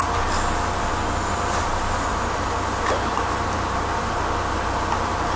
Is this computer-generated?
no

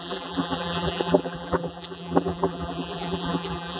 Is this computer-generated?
yes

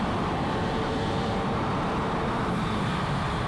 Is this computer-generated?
yes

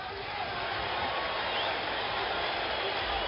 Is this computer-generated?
no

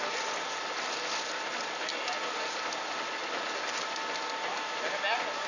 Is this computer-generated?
no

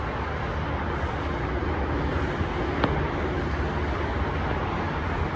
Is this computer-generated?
no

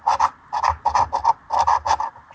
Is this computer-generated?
no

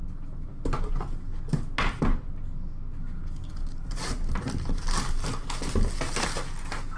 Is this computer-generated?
no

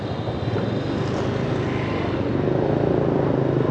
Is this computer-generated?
no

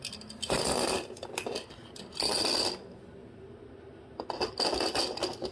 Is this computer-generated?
no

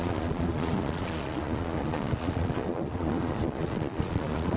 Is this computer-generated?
yes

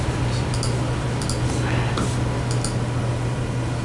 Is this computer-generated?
no